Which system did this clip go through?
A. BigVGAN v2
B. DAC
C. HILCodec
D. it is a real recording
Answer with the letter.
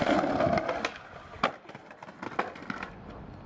D